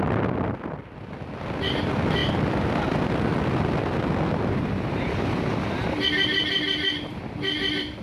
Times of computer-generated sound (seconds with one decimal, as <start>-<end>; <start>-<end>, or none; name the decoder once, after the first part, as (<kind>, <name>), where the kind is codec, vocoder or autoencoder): none